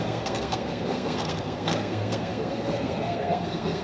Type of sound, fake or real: fake